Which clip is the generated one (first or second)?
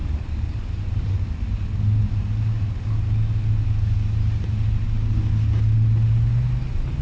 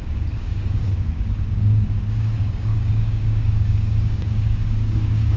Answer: second